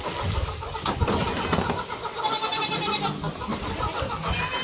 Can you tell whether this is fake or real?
real